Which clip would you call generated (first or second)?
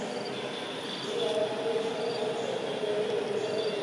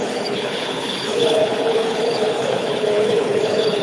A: second